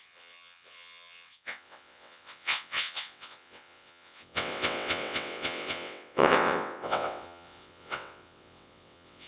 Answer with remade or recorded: remade